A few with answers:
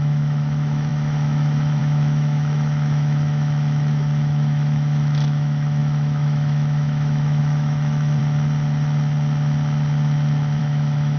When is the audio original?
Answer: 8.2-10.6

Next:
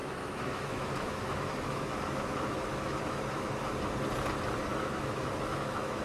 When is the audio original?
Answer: 3.6-4.7

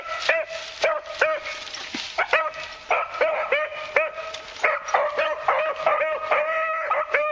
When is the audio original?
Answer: 0.0-7.3

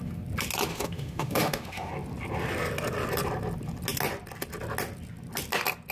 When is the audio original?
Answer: 0.0-0.7; 1.9-5.9

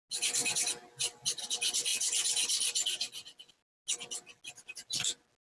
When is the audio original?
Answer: 0.0-5.5

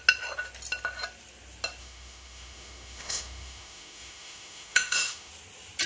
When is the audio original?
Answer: 0.0-1.8; 5.3-5.9

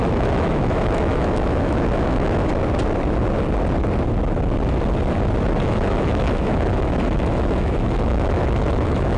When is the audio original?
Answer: 2.5-5.6